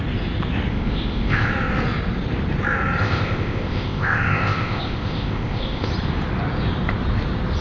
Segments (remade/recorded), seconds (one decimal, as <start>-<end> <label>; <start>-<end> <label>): 0.0-0.7 recorded; 0.7-1.5 remade; 1.5-3.0 recorded; 3.0-5.9 remade; 5.9-7.6 recorded